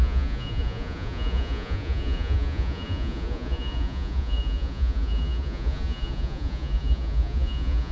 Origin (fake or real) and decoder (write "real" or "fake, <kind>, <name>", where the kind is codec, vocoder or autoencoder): fake, vocoder, Vocos